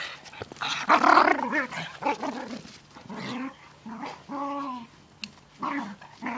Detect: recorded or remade recorded